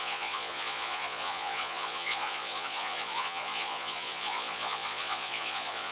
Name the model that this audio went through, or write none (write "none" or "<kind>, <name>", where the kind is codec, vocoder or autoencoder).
vocoder, Vocos